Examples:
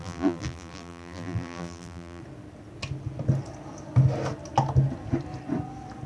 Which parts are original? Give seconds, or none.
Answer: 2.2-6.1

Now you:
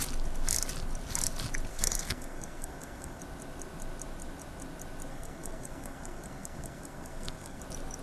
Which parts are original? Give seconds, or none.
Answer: 0.0-1.7; 3.2-5.1; 7.6-8.0

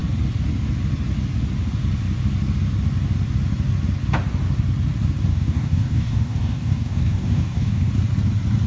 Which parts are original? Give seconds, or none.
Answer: 0.0-5.3; 7.9-8.7